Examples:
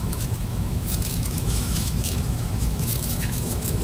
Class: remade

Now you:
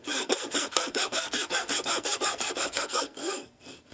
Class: remade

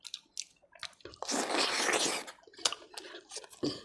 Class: recorded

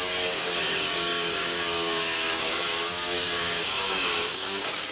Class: remade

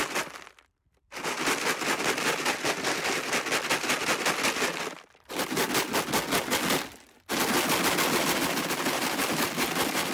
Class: recorded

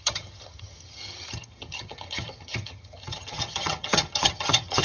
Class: remade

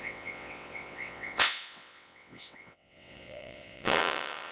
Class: remade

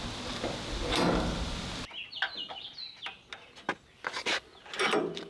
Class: recorded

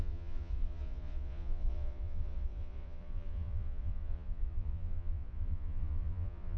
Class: remade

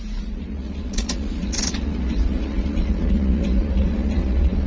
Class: remade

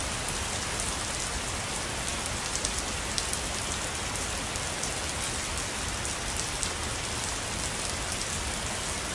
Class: recorded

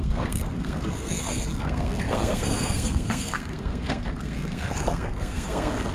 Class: remade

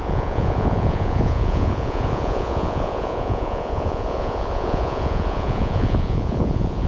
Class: remade